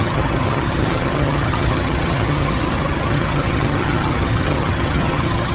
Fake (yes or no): yes